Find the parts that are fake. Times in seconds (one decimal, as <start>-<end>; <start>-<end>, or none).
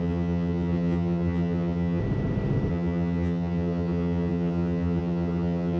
0.0-2.0; 2.7-5.8